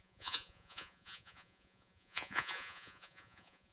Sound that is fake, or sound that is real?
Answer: fake